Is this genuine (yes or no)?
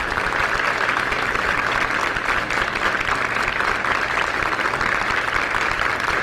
yes